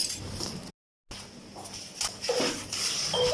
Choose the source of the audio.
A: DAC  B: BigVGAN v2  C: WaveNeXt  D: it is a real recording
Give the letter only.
D